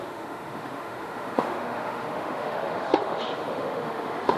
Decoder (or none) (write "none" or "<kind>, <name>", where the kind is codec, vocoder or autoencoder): autoencoder, DAC-VAE